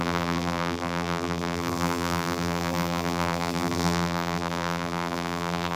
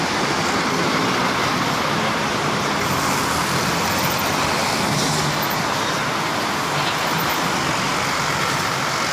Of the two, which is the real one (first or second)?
second